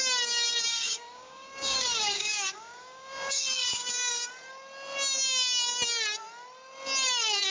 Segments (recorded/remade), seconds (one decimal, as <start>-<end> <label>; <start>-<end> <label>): 0.0-0.7 recorded; 0.7-4.3 remade; 4.3-7.5 recorded